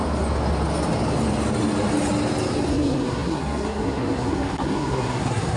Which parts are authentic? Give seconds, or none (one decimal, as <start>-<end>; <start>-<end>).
0.0-2.7